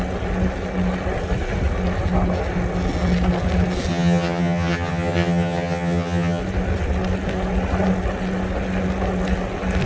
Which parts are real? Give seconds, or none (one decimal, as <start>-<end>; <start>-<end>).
0.0-3.9; 6.4-9.9